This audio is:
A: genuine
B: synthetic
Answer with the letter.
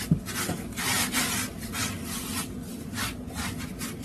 B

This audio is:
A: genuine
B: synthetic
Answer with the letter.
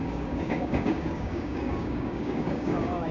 B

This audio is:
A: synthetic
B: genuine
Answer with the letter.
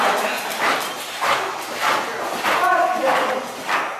B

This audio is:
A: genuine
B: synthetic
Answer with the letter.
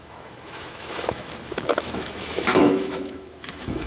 B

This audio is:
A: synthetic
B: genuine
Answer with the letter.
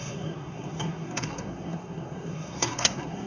A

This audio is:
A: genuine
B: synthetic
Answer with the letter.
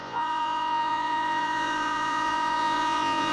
B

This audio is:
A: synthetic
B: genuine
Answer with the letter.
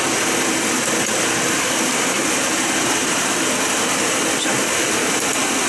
B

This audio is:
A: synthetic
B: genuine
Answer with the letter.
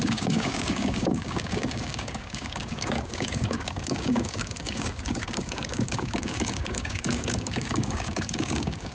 A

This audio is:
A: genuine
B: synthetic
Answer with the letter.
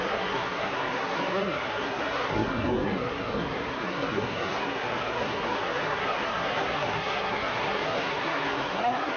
B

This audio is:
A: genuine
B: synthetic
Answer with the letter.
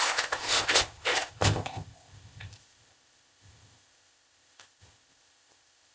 B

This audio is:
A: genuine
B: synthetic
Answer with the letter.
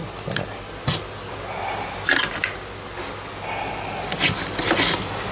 A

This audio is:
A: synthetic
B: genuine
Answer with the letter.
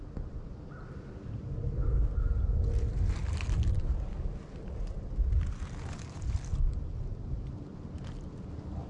B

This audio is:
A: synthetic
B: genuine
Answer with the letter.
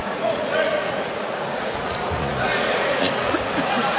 A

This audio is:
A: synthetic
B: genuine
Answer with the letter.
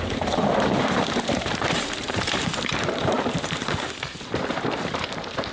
A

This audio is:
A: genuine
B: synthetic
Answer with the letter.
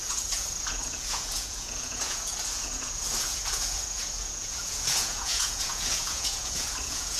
B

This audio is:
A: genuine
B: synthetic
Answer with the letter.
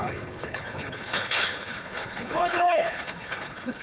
B